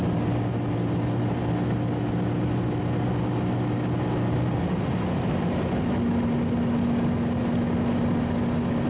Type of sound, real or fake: real